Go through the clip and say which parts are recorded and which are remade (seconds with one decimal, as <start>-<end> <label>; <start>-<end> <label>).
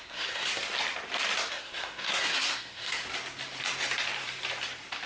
0.0-0.5 remade; 0.5-1.5 recorded; 1.5-3.0 remade; 3.0-5.1 recorded